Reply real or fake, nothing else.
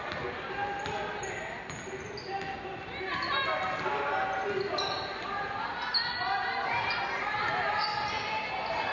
real